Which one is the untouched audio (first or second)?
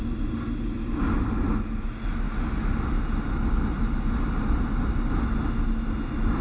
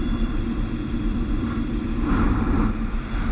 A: first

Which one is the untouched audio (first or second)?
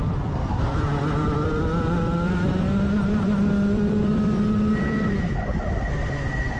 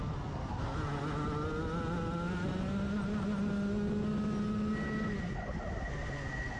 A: second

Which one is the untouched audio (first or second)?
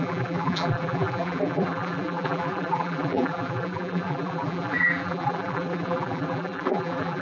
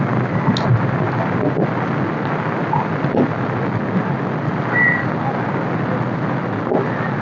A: second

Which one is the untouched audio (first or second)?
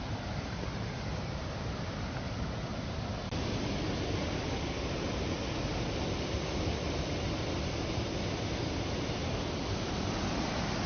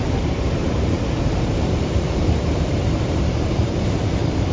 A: first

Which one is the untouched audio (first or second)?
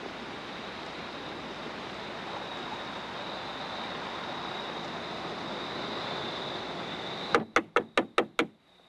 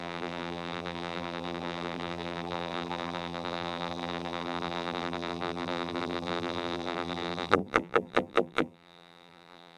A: first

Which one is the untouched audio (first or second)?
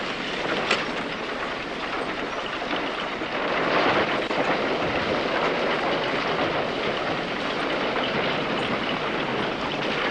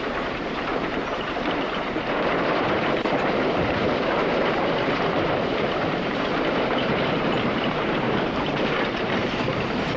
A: first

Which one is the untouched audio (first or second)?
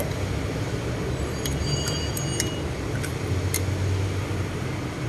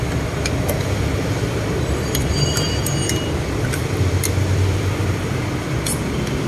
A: first